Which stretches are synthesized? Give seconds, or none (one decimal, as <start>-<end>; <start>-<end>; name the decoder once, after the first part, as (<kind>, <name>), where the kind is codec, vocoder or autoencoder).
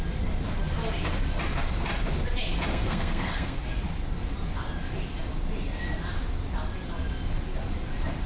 2.7-3.6 (codec, SNAC)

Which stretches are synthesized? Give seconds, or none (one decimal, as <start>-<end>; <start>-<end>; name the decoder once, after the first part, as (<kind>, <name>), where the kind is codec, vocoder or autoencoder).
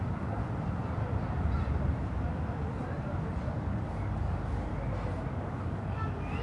0.0-0.4 (codec, DAC); 3.5-4.7; 5.3-6.4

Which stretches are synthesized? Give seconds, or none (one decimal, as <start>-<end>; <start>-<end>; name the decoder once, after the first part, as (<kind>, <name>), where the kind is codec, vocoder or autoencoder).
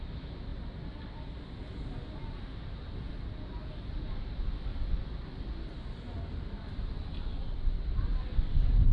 none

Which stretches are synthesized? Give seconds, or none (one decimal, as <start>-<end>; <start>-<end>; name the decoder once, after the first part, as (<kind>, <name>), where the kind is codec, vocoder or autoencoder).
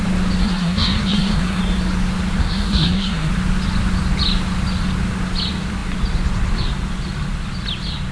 0.4-1.6 (codec, SNAC); 2.4-3.3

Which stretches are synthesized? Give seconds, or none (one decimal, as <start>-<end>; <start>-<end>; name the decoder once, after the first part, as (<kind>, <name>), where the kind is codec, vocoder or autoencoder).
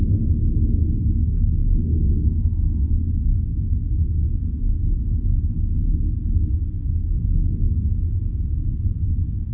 5.0-5.5 (vocoder, BigVGAN v2); 7.0-9.5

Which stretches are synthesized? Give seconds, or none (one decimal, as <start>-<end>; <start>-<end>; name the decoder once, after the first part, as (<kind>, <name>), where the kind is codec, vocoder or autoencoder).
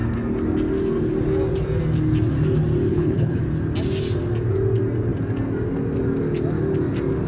2.9-3.4 (codec, HILCodec)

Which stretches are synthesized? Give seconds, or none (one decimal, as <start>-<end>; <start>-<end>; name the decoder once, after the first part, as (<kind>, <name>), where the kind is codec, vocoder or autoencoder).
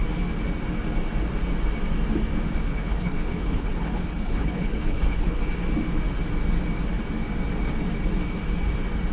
2.6-5.4 (codec, HILCodec)